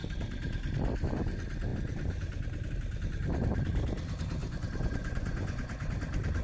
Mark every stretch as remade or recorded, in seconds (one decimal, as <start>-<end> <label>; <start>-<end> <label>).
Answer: 0.0-4.4 recorded; 4.4-5.9 remade; 5.9-6.4 recorded